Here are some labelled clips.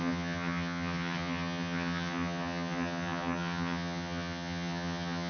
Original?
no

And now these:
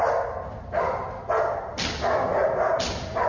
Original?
yes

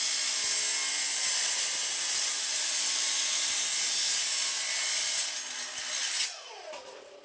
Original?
yes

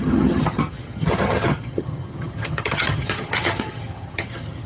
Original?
no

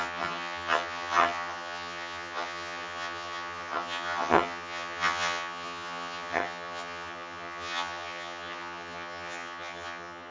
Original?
no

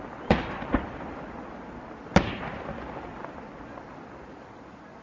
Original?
yes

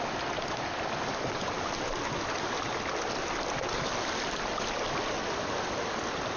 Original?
yes